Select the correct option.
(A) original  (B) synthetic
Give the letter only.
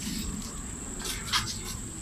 B